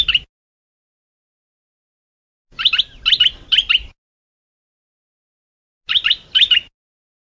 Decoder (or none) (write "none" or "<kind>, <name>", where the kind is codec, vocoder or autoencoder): none